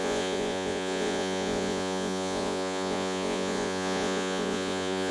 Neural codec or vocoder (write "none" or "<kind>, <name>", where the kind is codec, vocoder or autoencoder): vocoder, Vocos